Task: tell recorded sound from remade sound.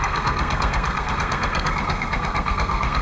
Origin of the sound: remade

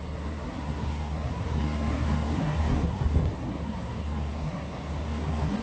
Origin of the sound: remade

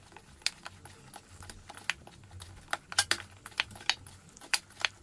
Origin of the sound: recorded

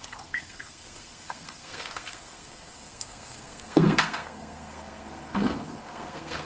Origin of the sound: remade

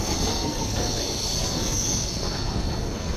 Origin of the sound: remade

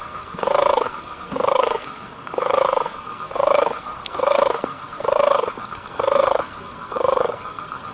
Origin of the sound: remade